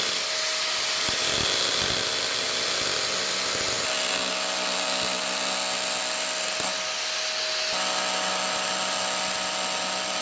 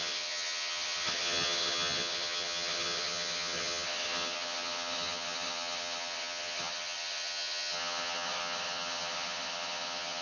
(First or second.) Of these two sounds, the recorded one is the first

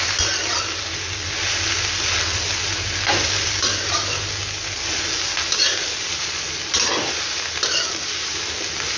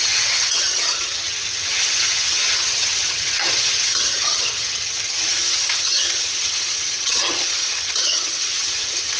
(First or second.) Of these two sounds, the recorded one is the first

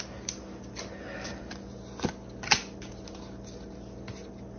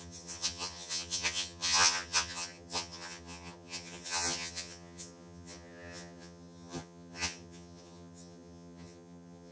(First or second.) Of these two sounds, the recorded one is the first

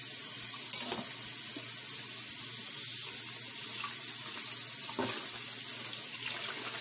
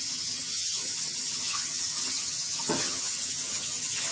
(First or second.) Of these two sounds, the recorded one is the first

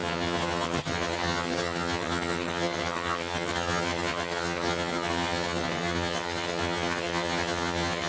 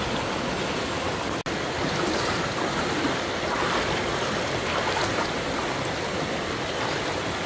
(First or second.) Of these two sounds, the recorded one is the second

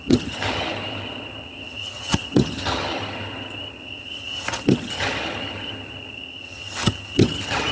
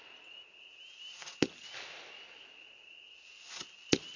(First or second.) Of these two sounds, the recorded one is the second